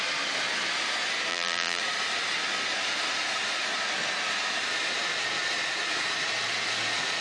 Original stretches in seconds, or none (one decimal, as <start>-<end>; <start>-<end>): 0.0-1.3; 1.8-7.2